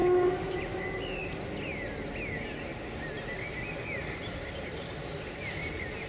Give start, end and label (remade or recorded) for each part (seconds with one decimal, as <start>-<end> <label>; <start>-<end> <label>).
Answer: 0.0-0.6 remade; 0.6-6.1 recorded